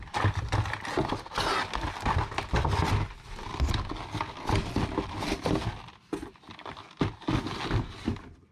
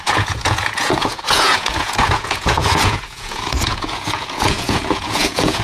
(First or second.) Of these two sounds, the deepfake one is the second